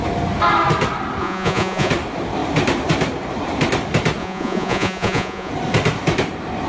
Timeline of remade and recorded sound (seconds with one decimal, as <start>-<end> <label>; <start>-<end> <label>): 0.0-1.2 recorded; 1.2-1.9 remade; 1.9-4.2 recorded; 4.2-5.5 remade; 5.5-6.7 recorded